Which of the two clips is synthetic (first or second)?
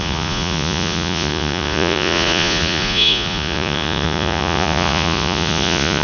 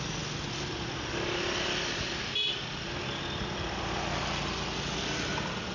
first